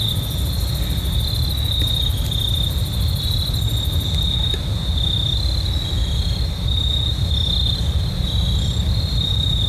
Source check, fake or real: real